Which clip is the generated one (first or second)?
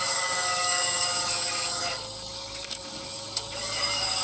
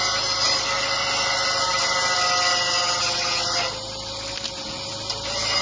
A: first